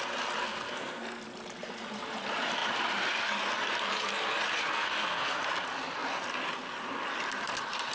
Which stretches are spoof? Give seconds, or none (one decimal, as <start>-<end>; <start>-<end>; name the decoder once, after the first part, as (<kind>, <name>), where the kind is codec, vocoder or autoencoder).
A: 0.4-1.2 (codec, SNAC); 4.7-5.4